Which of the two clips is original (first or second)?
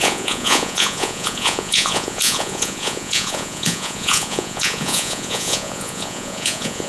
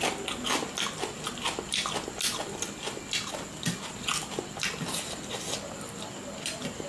second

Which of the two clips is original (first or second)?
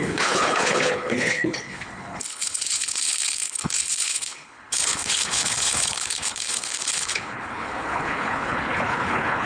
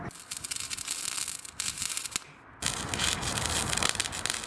second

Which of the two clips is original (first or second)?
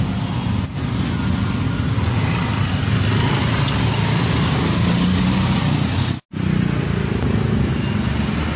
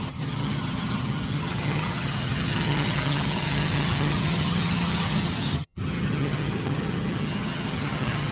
first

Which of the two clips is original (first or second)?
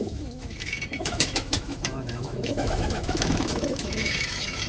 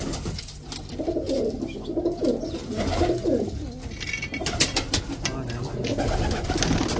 second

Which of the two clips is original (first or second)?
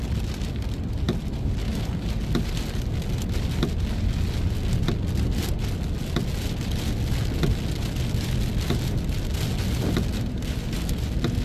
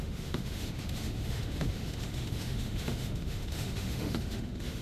first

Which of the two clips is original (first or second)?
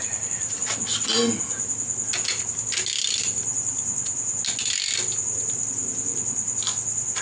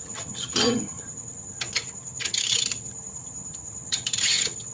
first